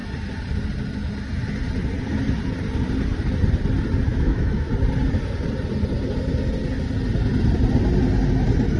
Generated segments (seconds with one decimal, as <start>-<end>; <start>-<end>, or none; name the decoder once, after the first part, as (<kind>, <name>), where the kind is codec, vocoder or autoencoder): 4.1-4.7 (autoencoder, DAC-VAE)